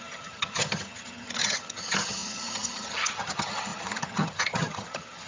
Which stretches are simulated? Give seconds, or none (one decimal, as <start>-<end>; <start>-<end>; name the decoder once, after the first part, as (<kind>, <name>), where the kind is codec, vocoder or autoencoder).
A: 0.0-5.3 (vocoder, HiFi-GAN)